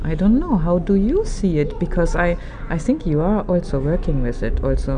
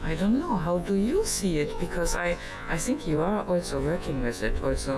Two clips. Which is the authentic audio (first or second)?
first